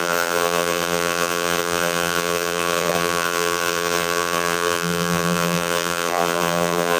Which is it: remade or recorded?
remade